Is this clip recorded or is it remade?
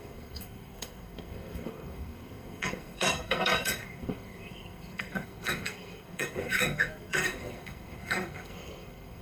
remade